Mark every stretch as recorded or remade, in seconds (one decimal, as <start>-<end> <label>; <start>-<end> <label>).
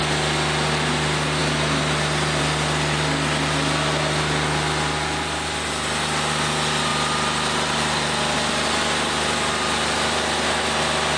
0.0-11.2 recorded